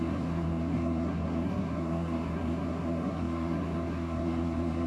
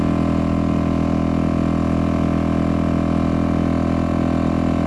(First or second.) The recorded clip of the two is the second